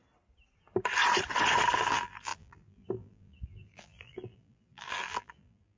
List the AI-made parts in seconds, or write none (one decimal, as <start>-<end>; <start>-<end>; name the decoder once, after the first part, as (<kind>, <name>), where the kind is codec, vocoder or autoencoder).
1.9-5.8 (vocoder, BigVGAN v2)